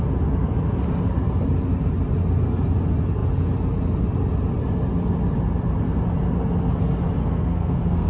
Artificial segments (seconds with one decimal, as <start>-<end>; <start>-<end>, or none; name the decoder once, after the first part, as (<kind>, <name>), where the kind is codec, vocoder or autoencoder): 7.2-8.1 (codec, SNAC)